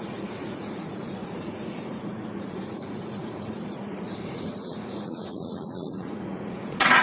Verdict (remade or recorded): remade